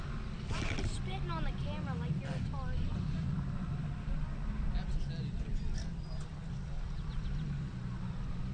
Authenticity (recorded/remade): recorded